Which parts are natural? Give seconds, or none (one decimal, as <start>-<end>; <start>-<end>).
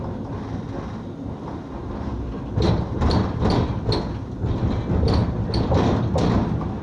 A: 0.0-6.8